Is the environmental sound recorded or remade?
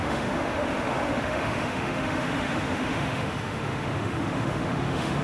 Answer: remade